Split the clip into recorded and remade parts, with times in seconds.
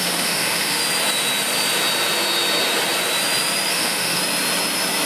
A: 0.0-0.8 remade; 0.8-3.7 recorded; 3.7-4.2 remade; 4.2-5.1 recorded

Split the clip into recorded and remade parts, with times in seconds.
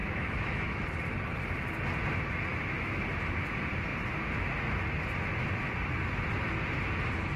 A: 0.0-0.8 remade; 0.8-2.5 recorded; 2.5-3.0 remade; 3.0-7.4 recorded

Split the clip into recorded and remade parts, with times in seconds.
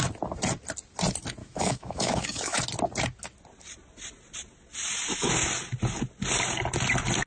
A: 0.0-1.4 recorded; 1.4-2.6 remade; 2.6-7.3 recorded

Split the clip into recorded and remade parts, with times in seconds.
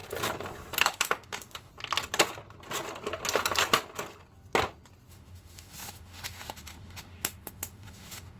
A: 0.0-0.8 recorded; 0.8-1.7 remade; 1.7-5.1 recorded; 5.1-8.4 remade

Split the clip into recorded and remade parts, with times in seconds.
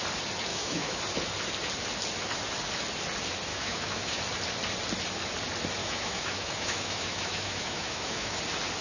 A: 0.0-0.5 recorded; 0.5-1.0 remade; 1.0-3.5 recorded; 3.5-4.2 remade; 4.2-5.8 recorded; 5.8-8.4 remade; 8.4-8.8 recorded